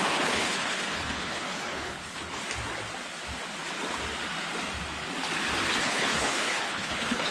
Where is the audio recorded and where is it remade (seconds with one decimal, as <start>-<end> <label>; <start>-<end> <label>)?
0.0-2.4 remade; 2.4-5.8 recorded; 5.8-7.3 remade